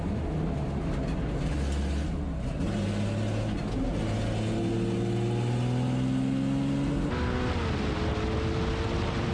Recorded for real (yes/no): yes